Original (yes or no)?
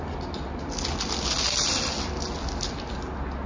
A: yes